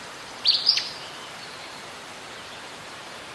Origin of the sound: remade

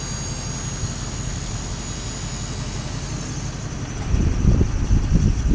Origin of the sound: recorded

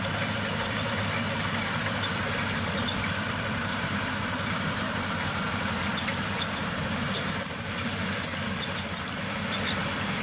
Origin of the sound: remade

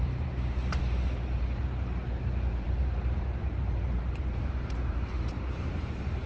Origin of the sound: remade